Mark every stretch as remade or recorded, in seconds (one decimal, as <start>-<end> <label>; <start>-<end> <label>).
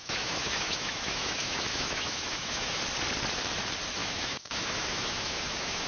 0.0-2.8 remade; 2.8-4.0 recorded; 4.0-5.9 remade